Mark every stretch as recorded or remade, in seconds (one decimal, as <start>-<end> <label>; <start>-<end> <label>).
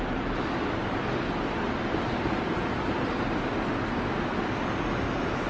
0.0-5.5 recorded